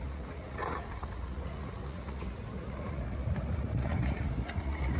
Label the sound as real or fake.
fake